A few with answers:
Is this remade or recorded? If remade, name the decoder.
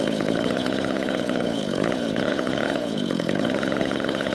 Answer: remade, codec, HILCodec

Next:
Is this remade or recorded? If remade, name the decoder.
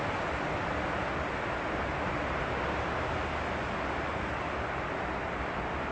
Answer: recorded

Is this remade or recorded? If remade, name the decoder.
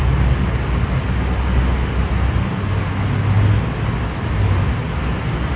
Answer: recorded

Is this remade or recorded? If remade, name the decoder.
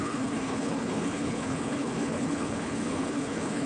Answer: remade, codec, HILCodec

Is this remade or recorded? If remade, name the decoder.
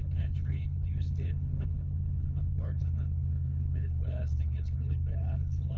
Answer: remade, codec, HILCodec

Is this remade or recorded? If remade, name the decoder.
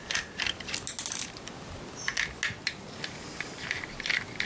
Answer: recorded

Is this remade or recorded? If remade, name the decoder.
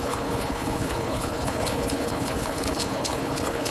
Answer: remade, codec, HILCodec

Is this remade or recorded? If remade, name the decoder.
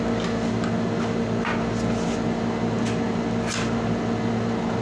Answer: recorded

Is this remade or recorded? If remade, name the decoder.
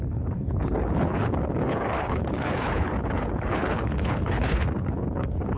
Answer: remade, codec, HILCodec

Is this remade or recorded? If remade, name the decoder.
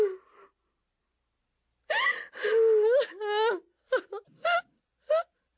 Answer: recorded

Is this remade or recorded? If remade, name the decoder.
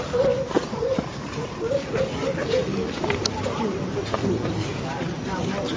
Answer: recorded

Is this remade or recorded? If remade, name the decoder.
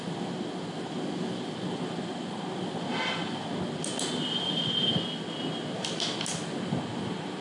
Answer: recorded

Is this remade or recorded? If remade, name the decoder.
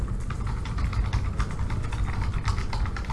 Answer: recorded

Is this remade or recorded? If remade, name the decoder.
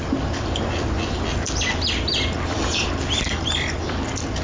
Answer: recorded